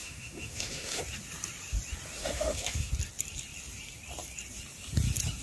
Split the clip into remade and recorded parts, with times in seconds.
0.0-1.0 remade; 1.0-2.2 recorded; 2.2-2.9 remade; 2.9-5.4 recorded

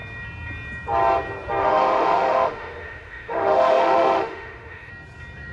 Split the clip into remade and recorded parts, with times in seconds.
0.0-1.6 recorded; 1.6-4.9 remade; 4.9-5.5 recorded

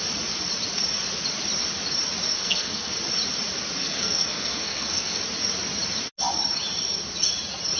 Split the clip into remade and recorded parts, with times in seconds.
0.0-2.3 recorded; 2.3-2.9 remade; 2.9-3.8 recorded; 3.8-5.2 remade; 5.2-7.8 recorded

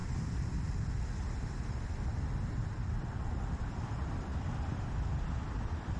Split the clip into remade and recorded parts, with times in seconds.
0.0-6.0 remade

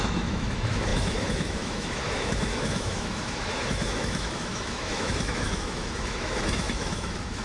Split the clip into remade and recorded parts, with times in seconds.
0.0-7.4 remade

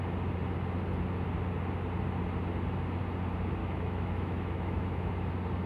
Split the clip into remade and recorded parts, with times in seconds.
0.0-3.6 recorded; 3.6-5.1 remade; 5.1-5.7 recorded

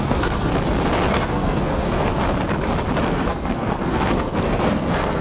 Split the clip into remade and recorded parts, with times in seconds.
0.0-0.5 remade; 0.5-1.1 recorded; 1.1-2.1 remade; 2.1-3.1 recorded; 3.1-5.2 remade

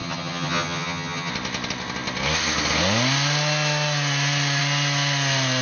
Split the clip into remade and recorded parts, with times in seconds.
0.0-1.3 remade; 1.3-5.6 recorded